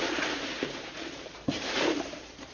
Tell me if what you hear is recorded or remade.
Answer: remade